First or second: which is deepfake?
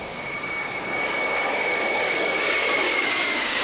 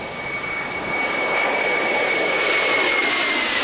first